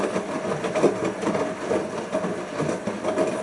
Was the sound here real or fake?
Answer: real